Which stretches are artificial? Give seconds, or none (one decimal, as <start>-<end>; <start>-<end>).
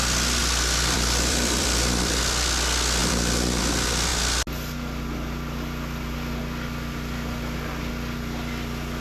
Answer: 0.4-2.2; 3.0-3.6